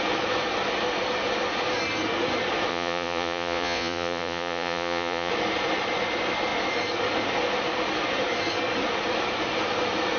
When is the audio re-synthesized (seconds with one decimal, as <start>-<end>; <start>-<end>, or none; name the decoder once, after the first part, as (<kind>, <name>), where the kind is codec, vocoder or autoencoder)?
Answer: 2.7-5.3 (vocoder, Vocos)